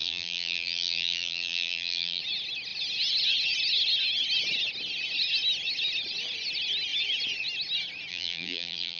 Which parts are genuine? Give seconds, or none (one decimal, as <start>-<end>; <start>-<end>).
2.2-8.1